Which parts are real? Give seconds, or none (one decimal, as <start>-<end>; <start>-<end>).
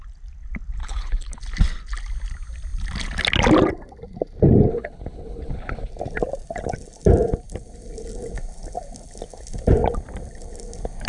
0.0-0.8; 1.4-4.7; 5.9-11.1